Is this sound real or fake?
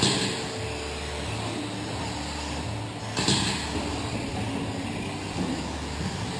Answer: real